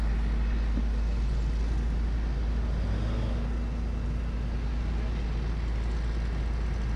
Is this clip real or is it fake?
real